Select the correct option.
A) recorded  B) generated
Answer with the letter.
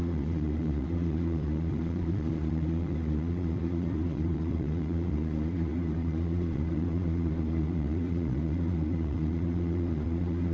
B